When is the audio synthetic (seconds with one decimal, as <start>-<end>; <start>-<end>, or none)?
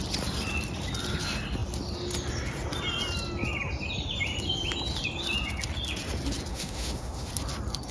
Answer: 6.5-7.3